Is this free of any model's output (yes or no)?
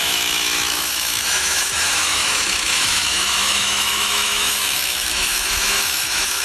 no